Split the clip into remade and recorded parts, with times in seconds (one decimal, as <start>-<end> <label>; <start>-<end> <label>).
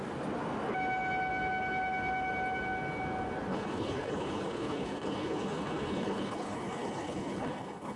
0.0-3.5 recorded; 3.5-8.0 remade